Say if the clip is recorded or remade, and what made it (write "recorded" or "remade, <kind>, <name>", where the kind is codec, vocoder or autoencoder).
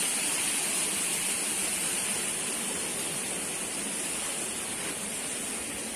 remade, vocoder, BigVGAN v2